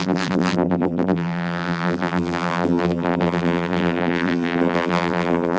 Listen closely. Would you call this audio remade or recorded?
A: remade